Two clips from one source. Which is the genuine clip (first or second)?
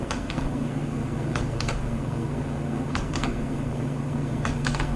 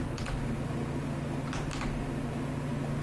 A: second